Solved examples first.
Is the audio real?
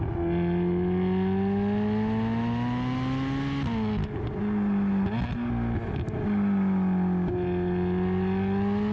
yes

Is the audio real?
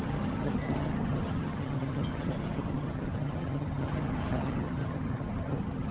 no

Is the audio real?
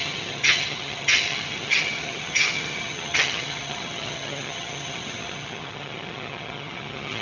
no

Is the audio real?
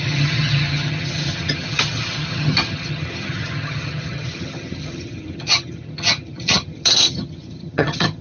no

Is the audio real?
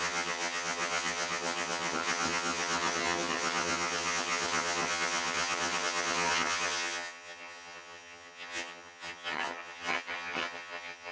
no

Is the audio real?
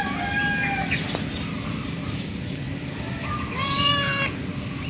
yes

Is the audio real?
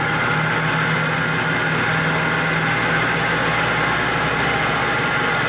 yes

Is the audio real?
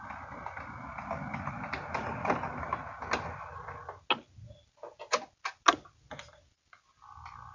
yes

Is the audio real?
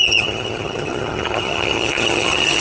no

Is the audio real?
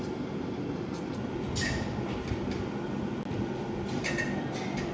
yes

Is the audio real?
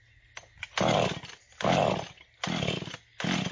yes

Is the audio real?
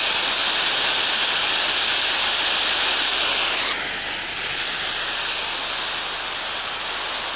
yes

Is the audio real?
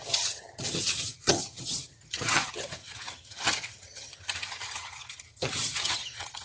no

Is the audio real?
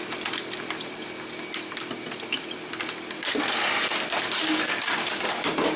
yes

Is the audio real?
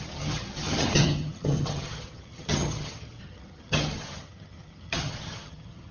no